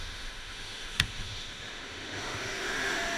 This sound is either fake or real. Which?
fake